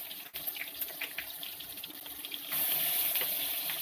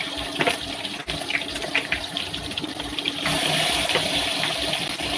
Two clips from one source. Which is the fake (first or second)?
second